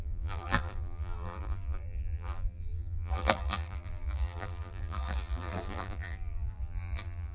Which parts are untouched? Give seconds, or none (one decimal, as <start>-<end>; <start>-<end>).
none